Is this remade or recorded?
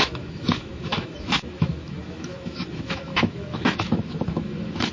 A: remade